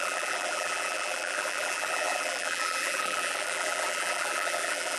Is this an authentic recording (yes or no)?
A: no